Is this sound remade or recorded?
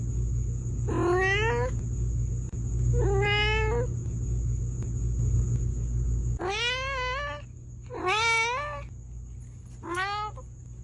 recorded